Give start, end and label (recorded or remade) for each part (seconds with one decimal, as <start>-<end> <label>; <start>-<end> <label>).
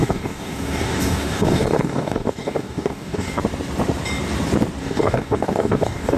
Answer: 0.0-3.4 remade; 3.4-4.8 recorded; 4.8-6.2 remade